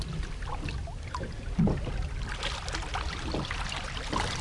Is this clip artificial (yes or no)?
no